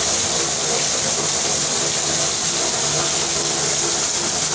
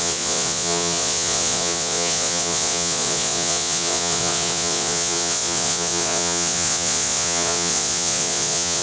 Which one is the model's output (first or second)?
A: second